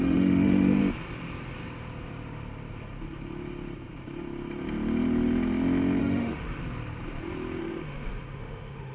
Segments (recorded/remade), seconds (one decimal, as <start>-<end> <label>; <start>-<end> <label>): 0.0-0.8 remade; 0.8-6.0 recorded; 6.0-6.6 remade; 6.6-7.6 recorded; 7.6-8.9 remade